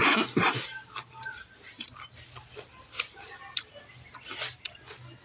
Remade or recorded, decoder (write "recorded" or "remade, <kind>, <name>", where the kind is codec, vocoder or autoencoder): recorded